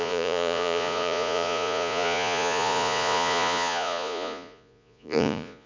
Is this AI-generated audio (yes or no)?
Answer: yes